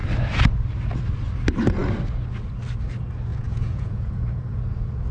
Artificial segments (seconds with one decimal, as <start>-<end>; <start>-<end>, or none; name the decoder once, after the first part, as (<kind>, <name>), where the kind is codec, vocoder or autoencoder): 3.3-4.6 (vocoder, Vocos)